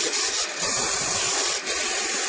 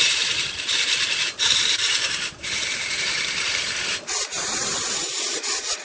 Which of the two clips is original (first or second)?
first